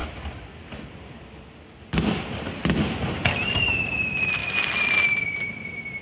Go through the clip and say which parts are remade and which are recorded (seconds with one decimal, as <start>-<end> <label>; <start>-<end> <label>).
0.0-6.0 recorded